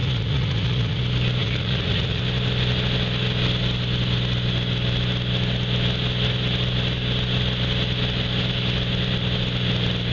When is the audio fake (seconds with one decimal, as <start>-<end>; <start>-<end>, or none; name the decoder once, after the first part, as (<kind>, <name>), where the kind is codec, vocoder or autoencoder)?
0.0-1.0 (vocoder, Vocos); 1.4-2.2